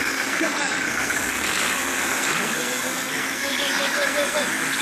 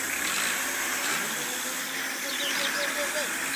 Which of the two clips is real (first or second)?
second